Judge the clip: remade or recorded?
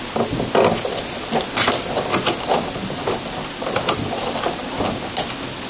recorded